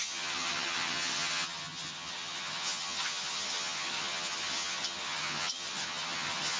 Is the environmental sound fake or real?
fake